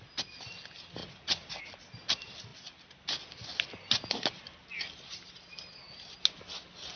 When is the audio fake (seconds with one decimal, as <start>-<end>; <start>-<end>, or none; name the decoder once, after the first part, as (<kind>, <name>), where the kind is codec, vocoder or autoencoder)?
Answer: 1.0-1.5 (vocoder, Vocos)

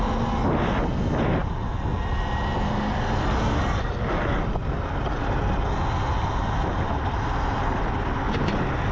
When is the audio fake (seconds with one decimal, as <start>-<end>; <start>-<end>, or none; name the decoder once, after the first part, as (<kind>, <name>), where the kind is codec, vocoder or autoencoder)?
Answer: none